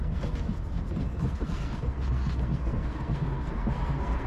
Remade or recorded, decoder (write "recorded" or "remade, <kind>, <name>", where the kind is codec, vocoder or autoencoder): remade, codec, SNAC